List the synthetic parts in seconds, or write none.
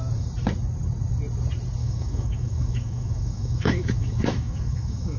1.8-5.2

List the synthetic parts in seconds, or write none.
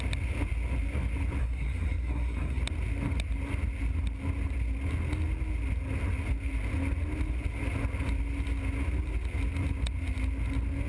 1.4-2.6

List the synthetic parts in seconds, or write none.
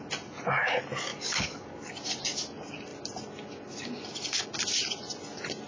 1.1-1.9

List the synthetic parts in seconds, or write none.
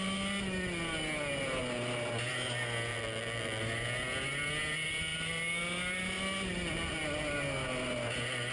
2.9-3.6